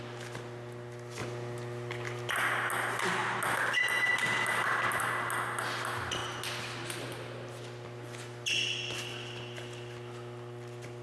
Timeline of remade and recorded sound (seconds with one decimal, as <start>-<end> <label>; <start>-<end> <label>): 0.0-11.0 recorded